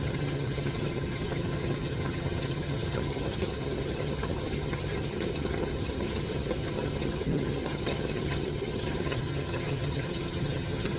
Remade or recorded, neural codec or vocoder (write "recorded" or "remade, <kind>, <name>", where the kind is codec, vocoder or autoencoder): remade, vocoder, HiFi-GAN